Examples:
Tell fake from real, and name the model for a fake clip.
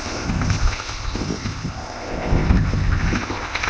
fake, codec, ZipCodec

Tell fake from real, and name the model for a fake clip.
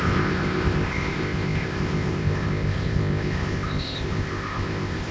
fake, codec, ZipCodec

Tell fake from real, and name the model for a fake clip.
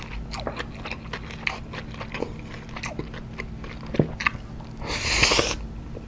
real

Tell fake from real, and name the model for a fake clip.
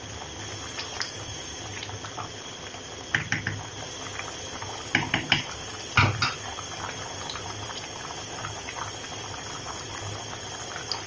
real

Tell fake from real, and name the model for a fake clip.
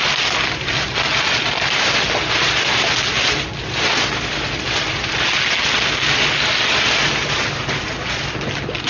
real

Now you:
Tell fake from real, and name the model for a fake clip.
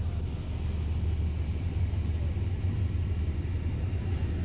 real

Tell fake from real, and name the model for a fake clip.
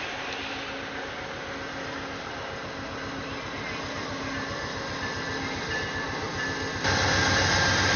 real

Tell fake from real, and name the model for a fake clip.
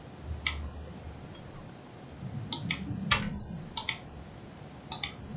real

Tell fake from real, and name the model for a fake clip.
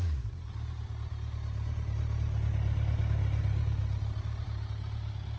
real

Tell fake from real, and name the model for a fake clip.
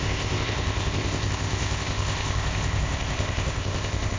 fake, codec, ZipCodec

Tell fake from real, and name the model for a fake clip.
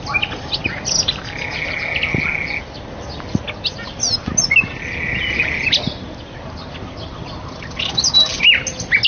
real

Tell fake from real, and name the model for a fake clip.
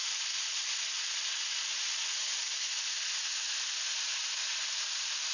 real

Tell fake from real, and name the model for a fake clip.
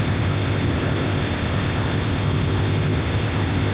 fake, codec, ZipCodec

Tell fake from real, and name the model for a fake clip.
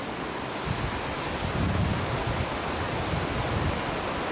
real